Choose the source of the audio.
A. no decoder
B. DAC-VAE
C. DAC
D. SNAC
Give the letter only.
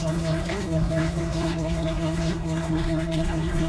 D